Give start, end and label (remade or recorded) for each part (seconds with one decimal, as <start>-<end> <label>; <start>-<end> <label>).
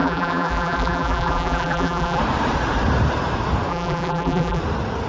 0.0-2.2 remade; 2.2-3.7 recorded; 3.7-4.6 remade; 4.6-5.1 recorded